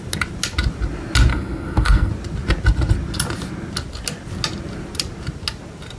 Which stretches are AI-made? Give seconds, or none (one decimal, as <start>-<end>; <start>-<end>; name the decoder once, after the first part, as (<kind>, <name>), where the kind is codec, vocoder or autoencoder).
1.3-2.1 (codec, SNAC)